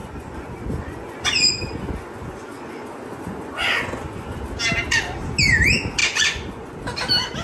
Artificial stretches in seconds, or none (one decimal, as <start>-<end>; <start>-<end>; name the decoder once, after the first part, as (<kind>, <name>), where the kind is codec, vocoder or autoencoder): 0.0-4.4 (vocoder, Vocos); 6.0-6.7